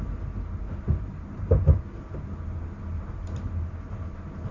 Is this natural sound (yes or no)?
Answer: yes